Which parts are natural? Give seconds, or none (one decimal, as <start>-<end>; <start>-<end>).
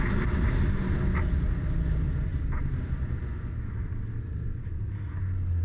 0.0-5.6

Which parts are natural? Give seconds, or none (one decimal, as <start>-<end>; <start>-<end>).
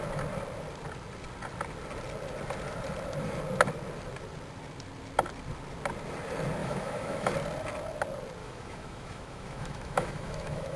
0.0-6.6; 7.3-8.4